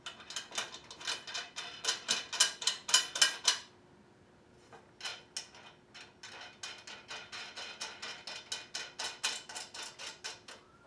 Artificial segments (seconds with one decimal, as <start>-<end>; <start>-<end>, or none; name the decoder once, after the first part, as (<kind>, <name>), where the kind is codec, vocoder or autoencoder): none